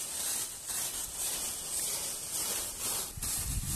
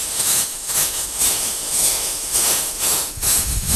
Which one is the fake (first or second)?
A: second